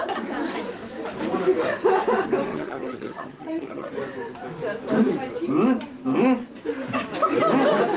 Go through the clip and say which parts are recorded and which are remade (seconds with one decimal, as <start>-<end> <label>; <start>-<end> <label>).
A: 0.0-2.5 recorded; 2.5-3.9 remade; 3.9-8.0 recorded